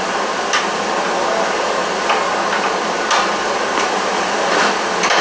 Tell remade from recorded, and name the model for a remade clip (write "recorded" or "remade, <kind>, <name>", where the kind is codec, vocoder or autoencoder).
recorded